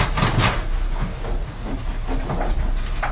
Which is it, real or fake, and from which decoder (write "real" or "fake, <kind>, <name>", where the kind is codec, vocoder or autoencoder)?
real